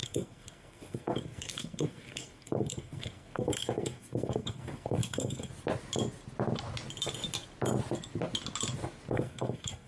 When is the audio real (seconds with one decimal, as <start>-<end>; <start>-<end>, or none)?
5.5-9.1